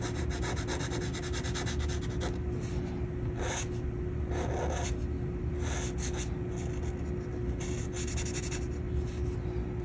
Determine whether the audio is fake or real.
real